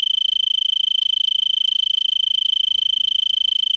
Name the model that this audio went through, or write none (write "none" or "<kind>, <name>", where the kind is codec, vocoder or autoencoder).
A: none